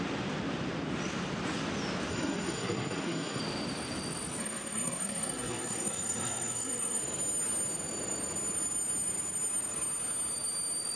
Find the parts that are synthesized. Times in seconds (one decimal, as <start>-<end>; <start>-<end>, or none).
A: 2.1-3.4; 4.4-7.0